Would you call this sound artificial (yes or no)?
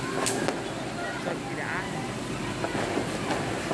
no